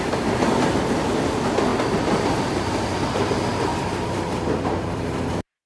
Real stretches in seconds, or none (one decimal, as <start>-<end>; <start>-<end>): 0.0-3.7; 5.3-5.7